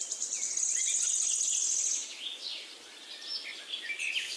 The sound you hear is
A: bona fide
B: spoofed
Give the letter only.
A